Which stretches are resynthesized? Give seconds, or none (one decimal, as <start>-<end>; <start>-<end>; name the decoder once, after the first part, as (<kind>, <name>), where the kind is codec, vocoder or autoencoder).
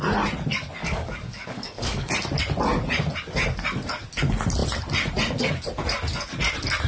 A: 0.8-2.1 (codec, DAC)